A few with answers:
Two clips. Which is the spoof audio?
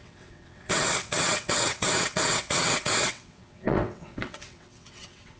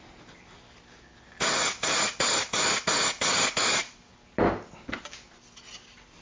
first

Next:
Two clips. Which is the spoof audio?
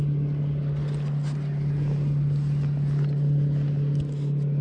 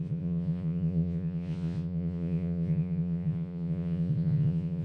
second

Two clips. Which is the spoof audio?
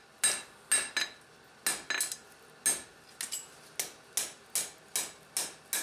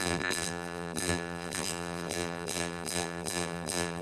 second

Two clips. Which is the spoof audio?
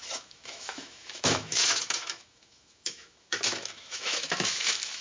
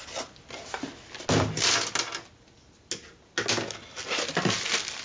first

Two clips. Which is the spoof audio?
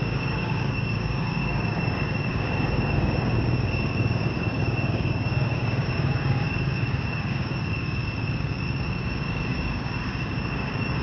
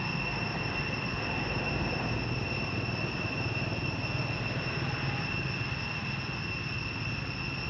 first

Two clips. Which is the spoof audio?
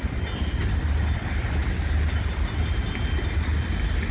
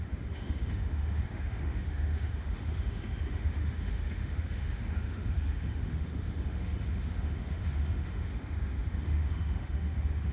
second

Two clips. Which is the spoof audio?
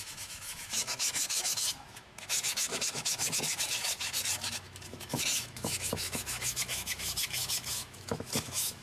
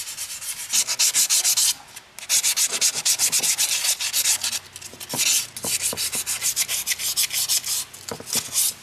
first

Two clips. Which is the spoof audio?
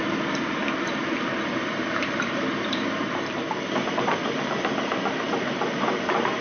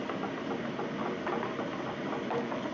first